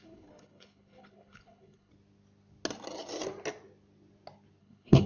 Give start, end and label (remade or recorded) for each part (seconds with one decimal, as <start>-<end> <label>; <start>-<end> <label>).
0.0-1.9 remade; 1.9-4.6 recorded; 4.6-5.1 remade